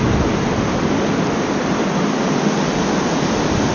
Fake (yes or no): no